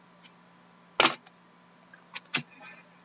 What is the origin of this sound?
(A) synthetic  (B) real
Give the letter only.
B